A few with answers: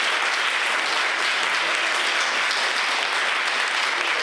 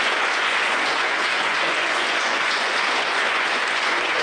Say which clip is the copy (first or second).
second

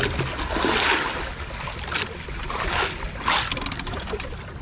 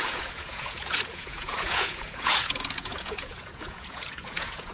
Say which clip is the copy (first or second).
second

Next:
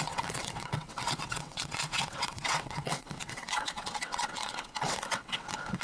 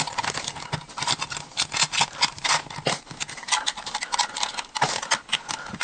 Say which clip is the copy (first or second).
first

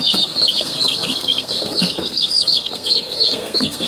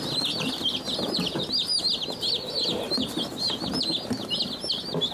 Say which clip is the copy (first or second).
first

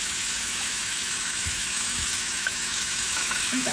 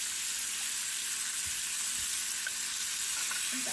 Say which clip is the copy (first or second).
first